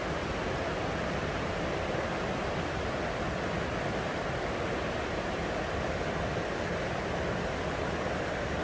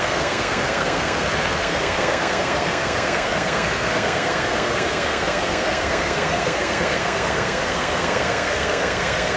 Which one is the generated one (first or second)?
second